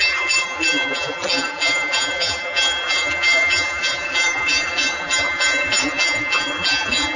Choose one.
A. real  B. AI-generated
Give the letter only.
B